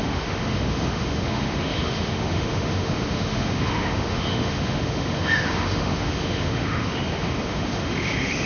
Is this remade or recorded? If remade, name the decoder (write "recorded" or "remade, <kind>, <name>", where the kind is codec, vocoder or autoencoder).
remade, autoencoder, DAC-VAE